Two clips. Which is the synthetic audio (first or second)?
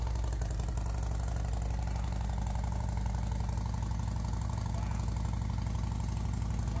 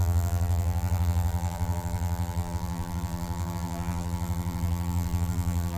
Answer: second